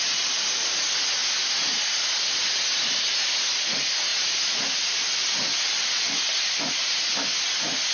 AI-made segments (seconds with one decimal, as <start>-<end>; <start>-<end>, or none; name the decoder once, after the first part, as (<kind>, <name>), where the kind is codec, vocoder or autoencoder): none